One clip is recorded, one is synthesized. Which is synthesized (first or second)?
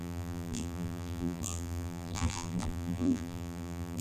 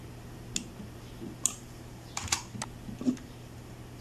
first